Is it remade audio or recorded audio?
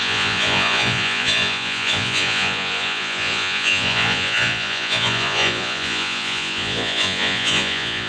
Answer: remade